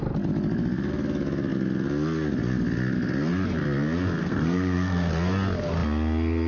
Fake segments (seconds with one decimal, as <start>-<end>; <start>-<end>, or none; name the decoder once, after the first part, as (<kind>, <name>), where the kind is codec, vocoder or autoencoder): 4.2-5.1 (codec, SNAC)